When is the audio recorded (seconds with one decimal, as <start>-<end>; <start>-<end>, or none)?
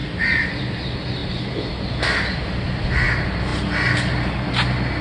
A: 0.6-5.0